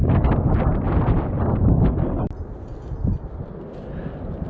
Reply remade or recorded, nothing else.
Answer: recorded